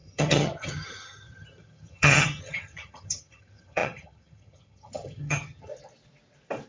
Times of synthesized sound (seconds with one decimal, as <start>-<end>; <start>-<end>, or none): 0.0-5.7

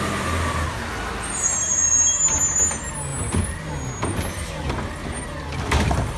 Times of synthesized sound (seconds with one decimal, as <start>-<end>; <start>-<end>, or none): none

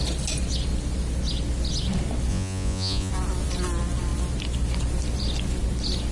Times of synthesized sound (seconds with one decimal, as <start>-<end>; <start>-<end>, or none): 2.3-3.1